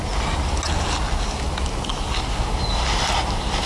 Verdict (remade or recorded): recorded